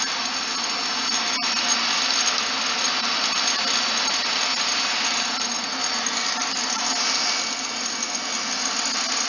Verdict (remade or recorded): recorded